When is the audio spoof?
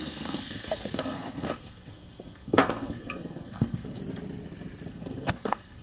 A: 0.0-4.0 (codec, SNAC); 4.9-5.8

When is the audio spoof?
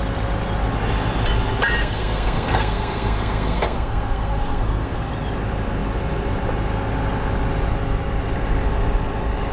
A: 1.8-5.1 (codec, SNAC)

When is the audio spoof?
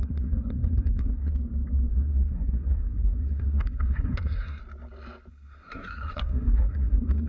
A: 0.0-1.3 (codec, SNAC); 1.9-4.6; 5.3-7.3